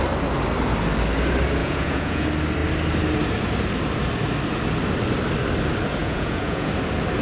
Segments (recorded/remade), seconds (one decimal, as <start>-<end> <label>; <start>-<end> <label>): 0.0-1.6 recorded; 1.6-2.2 remade; 2.2-6.0 recorded; 6.0-6.7 remade; 6.7-7.2 recorded